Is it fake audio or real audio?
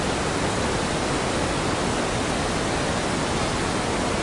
real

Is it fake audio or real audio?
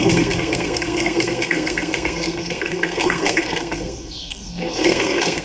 fake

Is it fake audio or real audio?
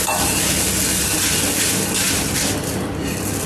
real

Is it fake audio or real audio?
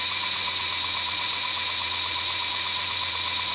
fake